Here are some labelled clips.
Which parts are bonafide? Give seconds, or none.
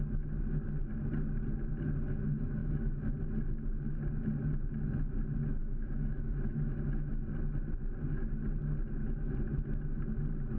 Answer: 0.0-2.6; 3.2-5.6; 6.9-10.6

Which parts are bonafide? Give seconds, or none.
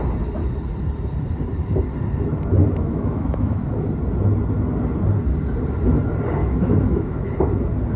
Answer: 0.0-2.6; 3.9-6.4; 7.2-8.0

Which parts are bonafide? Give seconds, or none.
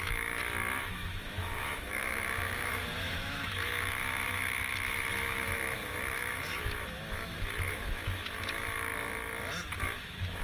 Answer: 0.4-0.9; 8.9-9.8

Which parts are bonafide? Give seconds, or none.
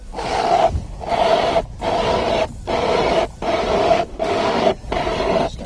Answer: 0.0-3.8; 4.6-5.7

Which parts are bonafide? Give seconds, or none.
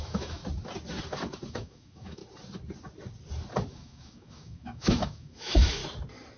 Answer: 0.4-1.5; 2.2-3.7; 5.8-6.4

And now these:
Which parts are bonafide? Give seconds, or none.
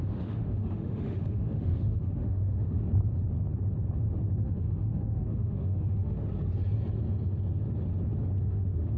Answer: 2.8-4.3; 6.2-8.4